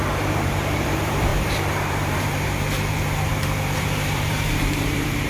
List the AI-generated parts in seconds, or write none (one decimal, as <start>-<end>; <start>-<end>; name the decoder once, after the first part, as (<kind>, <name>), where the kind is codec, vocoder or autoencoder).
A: 0.0-5.3 (vocoder, BigVGAN v2)